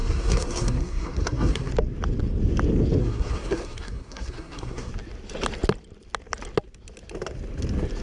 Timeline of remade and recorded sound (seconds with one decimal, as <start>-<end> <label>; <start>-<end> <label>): 0.0-1.7 remade; 1.7-3.0 recorded; 3.0-4.9 remade; 4.9-8.0 recorded